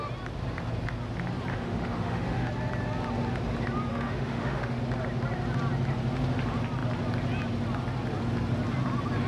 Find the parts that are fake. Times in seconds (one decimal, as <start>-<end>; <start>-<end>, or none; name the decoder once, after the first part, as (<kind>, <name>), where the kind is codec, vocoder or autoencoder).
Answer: 1.5-2.5 (autoencoder, DAC-VAE); 3.9-4.8